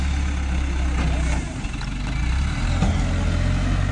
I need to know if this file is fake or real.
real